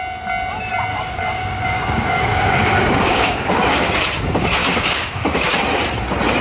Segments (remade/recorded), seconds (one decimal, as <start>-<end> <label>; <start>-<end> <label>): 0.0-0.9 recorded; 0.9-3.9 remade; 3.9-4.6 recorded; 4.6-5.5 remade; 5.5-6.4 recorded